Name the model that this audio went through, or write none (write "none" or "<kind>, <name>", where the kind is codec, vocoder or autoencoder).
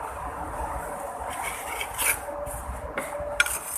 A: none